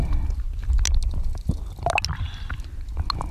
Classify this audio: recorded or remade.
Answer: recorded